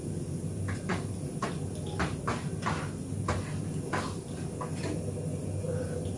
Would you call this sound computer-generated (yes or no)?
no